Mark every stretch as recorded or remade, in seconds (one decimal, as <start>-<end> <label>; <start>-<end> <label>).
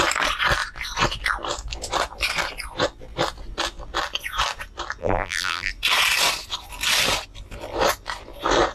0.0-5.0 recorded; 5.0-5.7 remade; 5.7-8.7 recorded